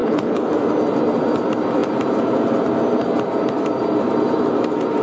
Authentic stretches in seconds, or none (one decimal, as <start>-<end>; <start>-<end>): 0.5-5.0